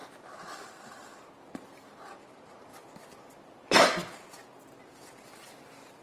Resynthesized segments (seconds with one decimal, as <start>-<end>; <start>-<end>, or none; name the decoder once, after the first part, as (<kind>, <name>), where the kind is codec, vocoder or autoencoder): none